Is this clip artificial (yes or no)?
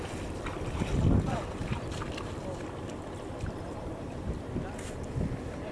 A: no